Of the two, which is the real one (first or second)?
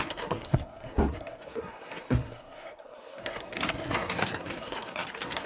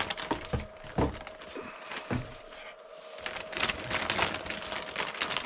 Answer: second